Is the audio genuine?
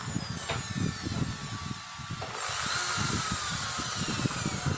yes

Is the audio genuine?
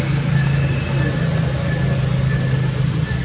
yes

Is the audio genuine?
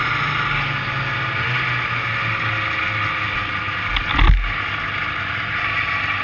yes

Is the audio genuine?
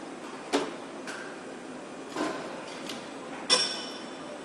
yes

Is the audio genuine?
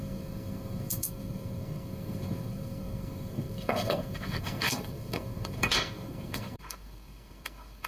no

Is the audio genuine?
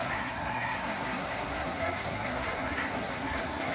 no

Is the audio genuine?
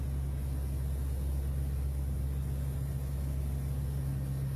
yes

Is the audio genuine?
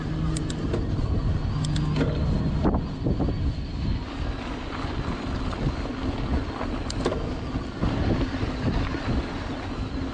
yes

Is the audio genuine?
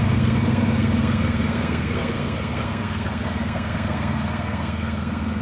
no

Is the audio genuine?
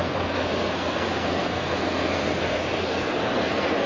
no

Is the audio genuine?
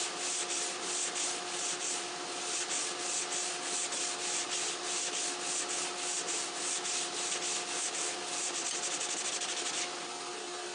yes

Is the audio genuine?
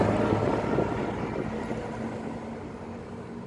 yes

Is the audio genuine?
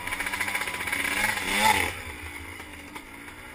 yes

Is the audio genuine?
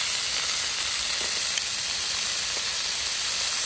yes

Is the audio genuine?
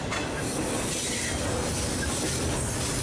yes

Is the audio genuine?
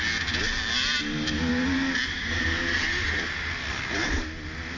yes